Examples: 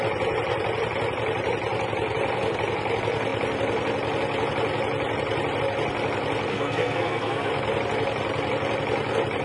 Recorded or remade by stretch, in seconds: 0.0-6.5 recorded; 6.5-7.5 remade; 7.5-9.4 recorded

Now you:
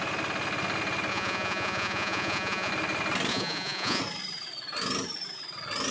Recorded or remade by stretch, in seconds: 0.0-1.1 recorded; 1.1-2.7 remade; 2.7-3.3 recorded; 3.3-4.0 remade; 4.0-5.9 recorded

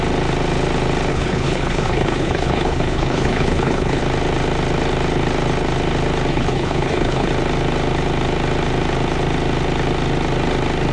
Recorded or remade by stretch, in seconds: 0.0-1.1 recorded; 1.1-4.0 remade; 4.0-6.3 recorded; 6.3-7.3 remade; 7.3-10.9 recorded

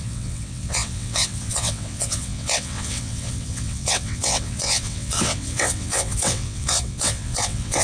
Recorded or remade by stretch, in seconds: 0.0-7.8 remade

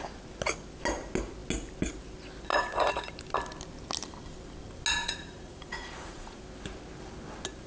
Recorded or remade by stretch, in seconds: 0.0-2.5 recorded; 2.5-3.1 remade; 3.1-5.0 recorded; 5.0-6.4 remade; 6.4-7.7 recorded

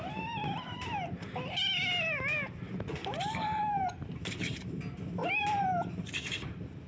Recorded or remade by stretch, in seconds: 0.0-3.0 recorded; 3.0-4.8 remade; 4.8-5.2 recorded; 5.2-5.9 remade; 5.9-6.9 recorded

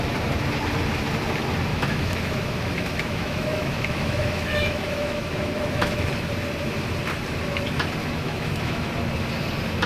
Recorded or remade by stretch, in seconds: 0.0-1.7 recorded; 1.7-6.3 remade; 6.3-8.0 recorded; 8.0-8.9 remade; 8.9-9.9 recorded